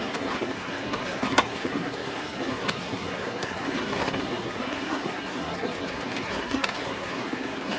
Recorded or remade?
remade